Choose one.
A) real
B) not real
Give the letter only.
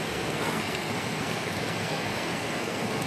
B